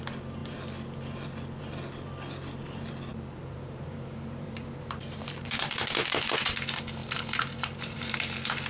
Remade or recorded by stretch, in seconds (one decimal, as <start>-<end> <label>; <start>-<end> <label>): 0.0-3.1 recorded; 3.1-5.7 remade; 5.7-7.0 recorded; 7.0-8.1 remade; 8.1-8.7 recorded